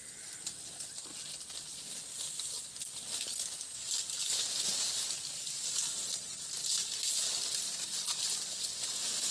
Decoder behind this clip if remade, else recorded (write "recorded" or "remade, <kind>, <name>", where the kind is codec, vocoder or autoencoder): recorded